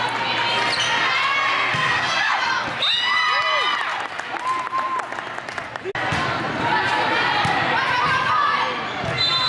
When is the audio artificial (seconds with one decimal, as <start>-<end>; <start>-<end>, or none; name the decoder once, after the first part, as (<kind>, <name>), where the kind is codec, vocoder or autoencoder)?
1.7-2.4 (codec, SNAC)